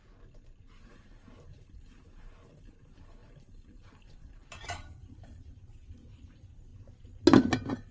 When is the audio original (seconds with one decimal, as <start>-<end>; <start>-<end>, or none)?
0.0-3.2; 5.5-7.9